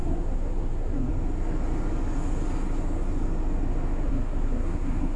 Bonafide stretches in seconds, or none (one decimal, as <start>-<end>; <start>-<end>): 1.1-4.1